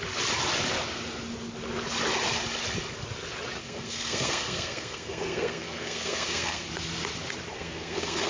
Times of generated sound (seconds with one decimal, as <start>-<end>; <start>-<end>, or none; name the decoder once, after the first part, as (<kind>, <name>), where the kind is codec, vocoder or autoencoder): 3.6-6.7 (codec, SNAC); 7.5-8.3